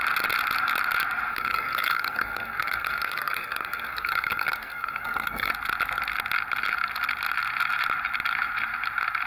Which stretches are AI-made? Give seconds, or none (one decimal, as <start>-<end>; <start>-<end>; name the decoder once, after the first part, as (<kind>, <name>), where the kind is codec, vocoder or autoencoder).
1.3-5.5 (codec, SNAC)